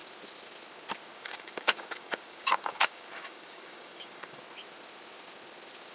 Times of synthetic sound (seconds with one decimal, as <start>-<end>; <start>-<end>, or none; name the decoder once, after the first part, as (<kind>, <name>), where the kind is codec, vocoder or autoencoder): 1.1-4.4 (codec, DAC)